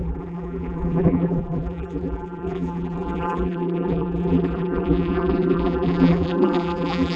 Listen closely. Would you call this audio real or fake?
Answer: fake